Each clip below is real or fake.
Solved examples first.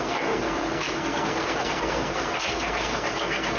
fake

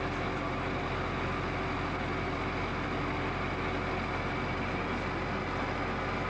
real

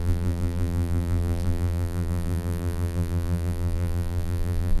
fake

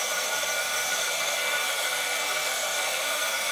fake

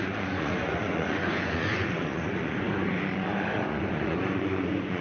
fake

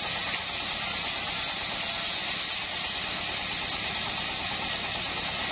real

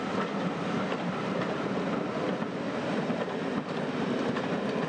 real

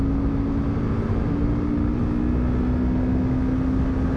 real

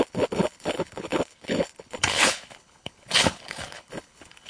fake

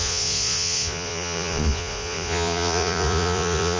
fake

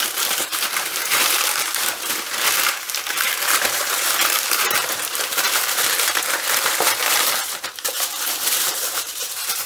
fake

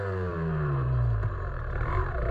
fake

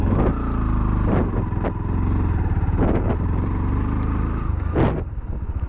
real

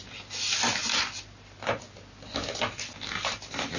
real